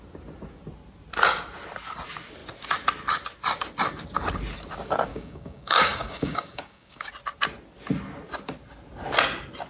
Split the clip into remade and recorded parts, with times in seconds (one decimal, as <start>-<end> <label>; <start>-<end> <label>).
0.0-5.1 recorded; 5.1-7.1 remade; 7.1-9.7 recorded